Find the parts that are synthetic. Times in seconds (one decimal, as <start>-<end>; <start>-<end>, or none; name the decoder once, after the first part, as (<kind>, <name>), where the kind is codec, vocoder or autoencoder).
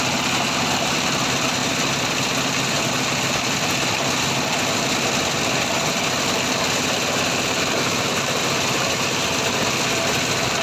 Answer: none